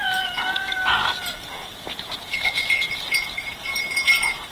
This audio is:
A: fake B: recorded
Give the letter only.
A